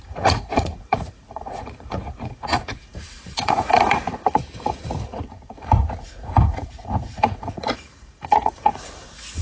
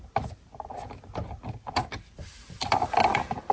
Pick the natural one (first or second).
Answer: second